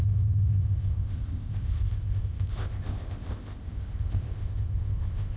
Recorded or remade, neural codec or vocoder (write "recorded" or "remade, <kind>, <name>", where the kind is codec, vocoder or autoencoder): remade, codec, ZipCodec